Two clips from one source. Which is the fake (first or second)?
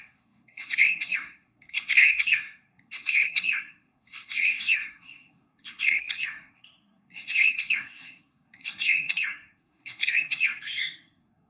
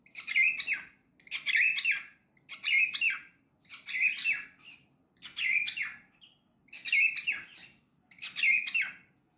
first